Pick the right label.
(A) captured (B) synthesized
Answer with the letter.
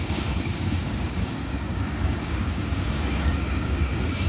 B